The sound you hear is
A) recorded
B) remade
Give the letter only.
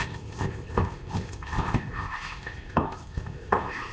B